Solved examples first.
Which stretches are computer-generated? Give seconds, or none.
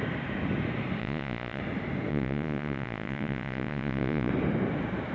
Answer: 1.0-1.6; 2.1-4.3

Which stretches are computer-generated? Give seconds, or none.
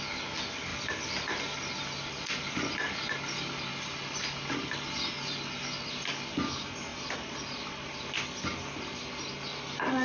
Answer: none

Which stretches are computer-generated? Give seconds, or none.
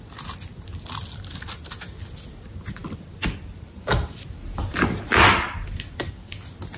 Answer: none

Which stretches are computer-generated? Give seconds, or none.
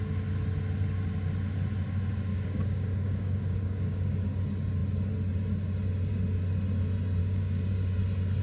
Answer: 2.3-4.3; 7.2-8.0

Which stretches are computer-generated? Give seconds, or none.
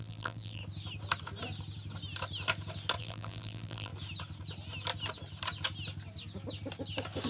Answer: 0.0-0.6; 3.0-3.9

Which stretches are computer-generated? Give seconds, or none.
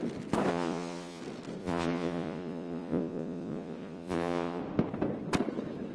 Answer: 0.5-1.2; 1.6-4.6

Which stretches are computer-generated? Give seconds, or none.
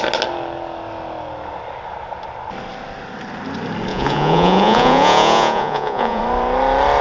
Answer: 3.9-6.2